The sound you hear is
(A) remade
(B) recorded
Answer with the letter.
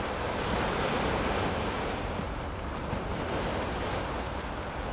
B